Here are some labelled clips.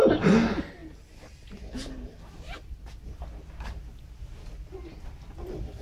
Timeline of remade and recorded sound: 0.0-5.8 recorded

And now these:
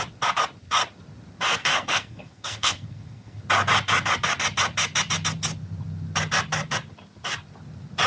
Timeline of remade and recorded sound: 0.0-1.6 recorded; 1.6-3.4 remade; 3.4-8.1 recorded

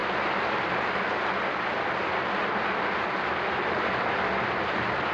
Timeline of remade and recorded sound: 0.0-5.1 recorded

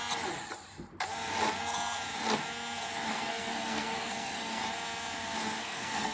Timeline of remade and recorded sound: 0.0-3.1 recorded; 3.1-4.6 remade; 4.6-5.6 recorded; 5.6-6.1 remade

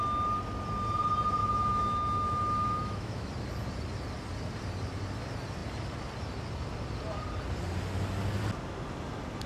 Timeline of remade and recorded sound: 0.0-1.4 recorded; 1.4-3.3 remade; 3.3-9.5 recorded

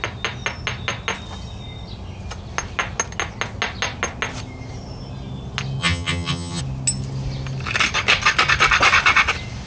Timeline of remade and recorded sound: 0.0-5.8 recorded; 5.8-6.6 remade; 6.6-9.7 recorded

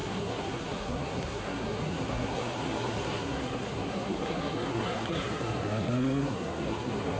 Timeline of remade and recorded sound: 0.0-7.2 remade

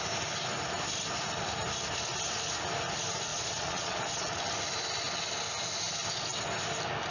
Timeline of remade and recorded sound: 0.0-3.3 recorded; 3.3-4.3 remade; 4.3-7.1 recorded